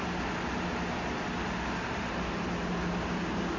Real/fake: real